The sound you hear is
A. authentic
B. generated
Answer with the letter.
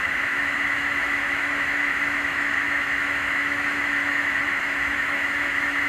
B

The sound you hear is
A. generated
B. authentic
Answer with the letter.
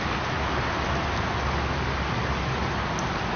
B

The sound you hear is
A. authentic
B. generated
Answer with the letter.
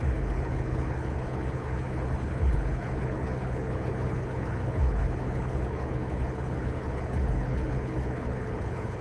B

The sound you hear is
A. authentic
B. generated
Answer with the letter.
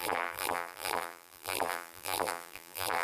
B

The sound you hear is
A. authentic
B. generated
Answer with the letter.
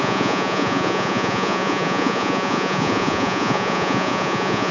B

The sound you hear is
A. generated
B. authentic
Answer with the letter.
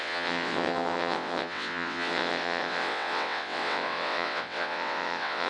A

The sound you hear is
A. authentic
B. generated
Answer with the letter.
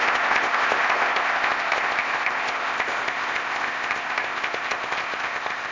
B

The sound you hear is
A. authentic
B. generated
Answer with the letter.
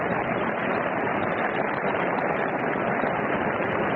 A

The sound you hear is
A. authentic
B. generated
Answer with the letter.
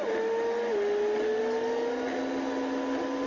A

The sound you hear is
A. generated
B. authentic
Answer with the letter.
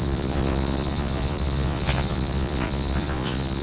A